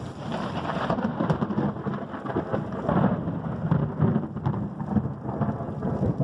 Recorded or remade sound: recorded